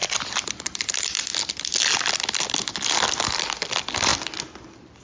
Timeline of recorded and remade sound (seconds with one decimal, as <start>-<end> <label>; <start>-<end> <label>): 0.0-1.3 remade; 1.3-2.9 recorded; 2.9-5.0 remade